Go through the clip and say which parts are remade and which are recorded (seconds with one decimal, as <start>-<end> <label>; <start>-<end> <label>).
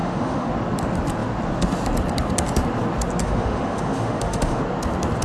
0.0-0.5 remade; 0.5-3.2 recorded; 3.2-4.6 remade; 4.6-5.2 recorded